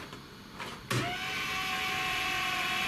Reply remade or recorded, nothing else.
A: recorded